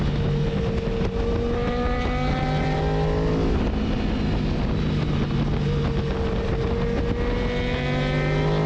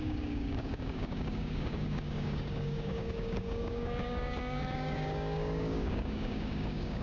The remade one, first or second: second